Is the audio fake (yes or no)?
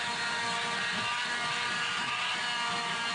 no